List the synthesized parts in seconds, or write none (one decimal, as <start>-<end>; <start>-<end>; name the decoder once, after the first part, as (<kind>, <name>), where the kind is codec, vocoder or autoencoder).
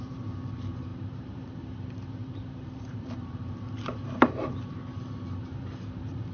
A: 0.0-4.8 (vocoder, BigVGAN v2); 5.5-6.3